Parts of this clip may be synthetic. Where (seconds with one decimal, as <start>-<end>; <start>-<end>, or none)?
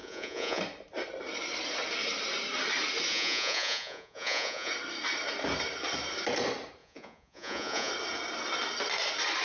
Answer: 0.0-0.6; 3.1-4.7; 6.8-7.9